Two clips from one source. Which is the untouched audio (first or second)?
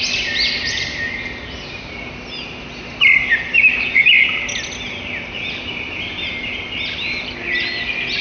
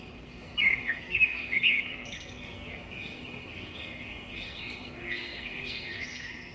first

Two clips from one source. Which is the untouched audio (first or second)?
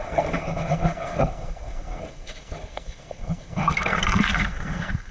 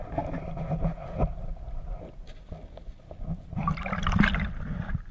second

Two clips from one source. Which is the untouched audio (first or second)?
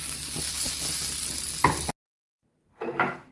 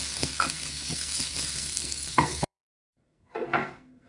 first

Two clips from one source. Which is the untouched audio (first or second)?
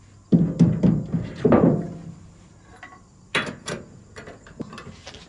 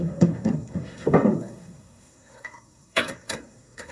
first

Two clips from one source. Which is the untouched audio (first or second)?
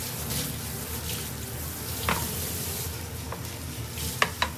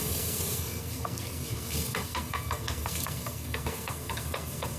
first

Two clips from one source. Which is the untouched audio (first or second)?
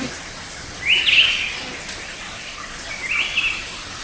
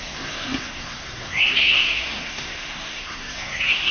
first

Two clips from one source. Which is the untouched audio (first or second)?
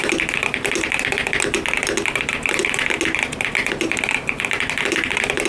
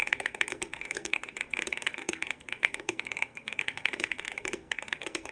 first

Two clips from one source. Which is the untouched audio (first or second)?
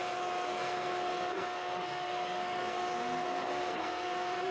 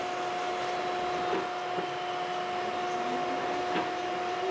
second